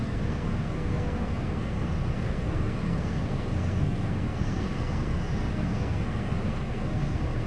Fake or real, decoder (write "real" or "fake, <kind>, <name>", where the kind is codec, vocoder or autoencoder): fake, codec, SNAC